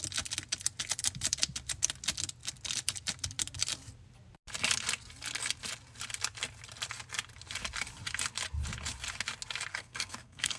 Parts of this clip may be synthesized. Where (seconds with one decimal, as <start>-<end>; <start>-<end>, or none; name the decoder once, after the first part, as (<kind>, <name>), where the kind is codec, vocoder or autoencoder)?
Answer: 9.7-10.6 (codec, SNAC)